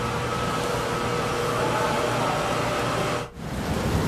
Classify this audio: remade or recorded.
recorded